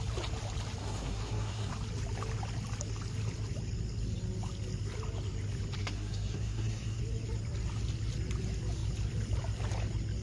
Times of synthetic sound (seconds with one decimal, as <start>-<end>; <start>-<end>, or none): 0.8-1.7; 5.8-7.0